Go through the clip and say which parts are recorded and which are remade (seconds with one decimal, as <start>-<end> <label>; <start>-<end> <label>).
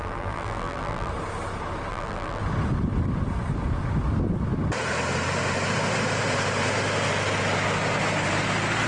0.0-1.1 remade; 1.1-1.9 recorded; 1.9-2.4 remade; 2.4-8.9 recorded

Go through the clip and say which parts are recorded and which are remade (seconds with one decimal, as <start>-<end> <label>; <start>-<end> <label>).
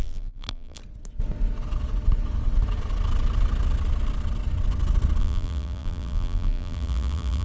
0.0-0.8 remade; 0.8-5.2 recorded; 5.2-7.4 remade